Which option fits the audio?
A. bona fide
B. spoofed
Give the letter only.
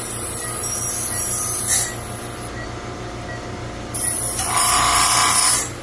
A